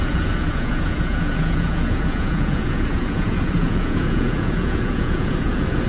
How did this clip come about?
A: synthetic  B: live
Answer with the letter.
A